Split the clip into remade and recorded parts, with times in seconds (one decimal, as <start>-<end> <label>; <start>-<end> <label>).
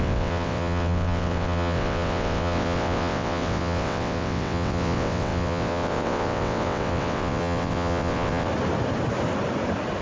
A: 0.0-8.5 remade; 8.5-10.0 recorded